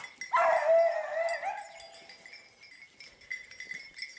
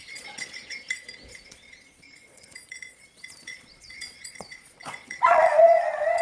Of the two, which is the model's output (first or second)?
second